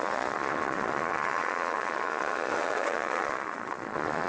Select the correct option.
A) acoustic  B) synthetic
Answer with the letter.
B